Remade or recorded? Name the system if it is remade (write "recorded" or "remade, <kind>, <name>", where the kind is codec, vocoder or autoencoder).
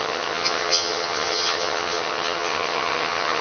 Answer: remade, vocoder, HiFi-GAN